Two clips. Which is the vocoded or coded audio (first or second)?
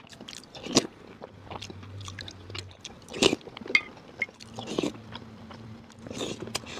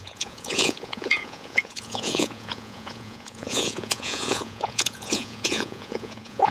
second